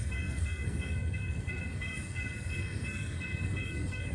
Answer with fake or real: fake